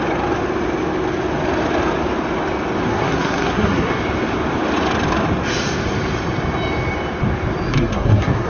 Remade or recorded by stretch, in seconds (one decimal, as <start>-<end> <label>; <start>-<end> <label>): 0.0-2.9 recorded; 2.9-4.0 remade; 4.0-7.7 recorded; 7.7-8.5 remade